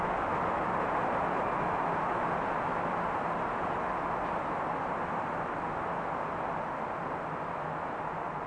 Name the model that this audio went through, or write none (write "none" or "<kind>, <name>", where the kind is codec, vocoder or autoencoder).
none